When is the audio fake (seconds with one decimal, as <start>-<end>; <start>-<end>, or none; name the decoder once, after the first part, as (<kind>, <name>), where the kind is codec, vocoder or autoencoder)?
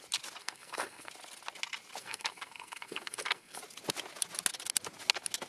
0.4-1.1 (codec, SNAC); 2.0-3.6